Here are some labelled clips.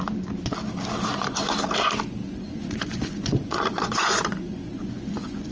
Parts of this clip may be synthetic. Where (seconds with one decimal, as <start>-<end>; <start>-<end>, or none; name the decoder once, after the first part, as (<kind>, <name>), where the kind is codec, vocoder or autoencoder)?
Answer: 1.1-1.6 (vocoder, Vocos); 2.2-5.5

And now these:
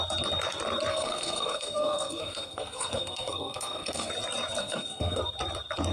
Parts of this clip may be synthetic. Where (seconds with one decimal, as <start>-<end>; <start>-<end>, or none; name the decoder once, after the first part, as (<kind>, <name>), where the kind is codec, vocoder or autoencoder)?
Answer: 0.9-4.1 (codec, SNAC); 4.6-5.2

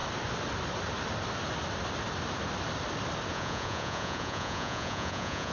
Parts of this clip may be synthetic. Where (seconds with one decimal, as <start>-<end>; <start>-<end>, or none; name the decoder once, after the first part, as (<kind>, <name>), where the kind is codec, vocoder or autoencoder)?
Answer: 3.3-5.5 (vocoder, Vocos)

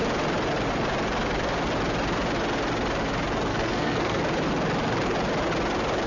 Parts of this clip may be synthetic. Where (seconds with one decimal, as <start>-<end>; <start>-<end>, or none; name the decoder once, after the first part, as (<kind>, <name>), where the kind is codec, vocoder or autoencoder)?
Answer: 3.5-4.2 (codec, SNAC)

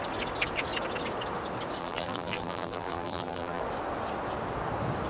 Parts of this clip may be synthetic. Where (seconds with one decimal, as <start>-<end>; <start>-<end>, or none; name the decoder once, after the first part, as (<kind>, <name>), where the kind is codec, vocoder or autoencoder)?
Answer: 1.8-3.6 (vocoder, BigVGAN v2)

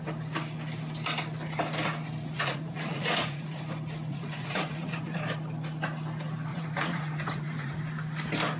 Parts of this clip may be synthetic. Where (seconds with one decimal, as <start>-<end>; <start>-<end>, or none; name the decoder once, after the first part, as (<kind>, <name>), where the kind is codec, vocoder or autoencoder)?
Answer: 2.2-3.6 (vocoder, Vocos); 4.1-5.2; 6.5-7.8

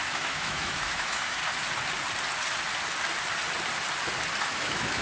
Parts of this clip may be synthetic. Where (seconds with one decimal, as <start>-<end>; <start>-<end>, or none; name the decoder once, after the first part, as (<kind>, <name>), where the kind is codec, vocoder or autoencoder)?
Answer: 0.0-1.4 (autoencoder, DAC-VAE); 4.4-5.0